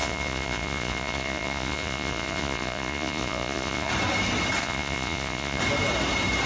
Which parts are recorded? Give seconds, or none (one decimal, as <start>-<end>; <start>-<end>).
3.9-4.6; 5.6-6.5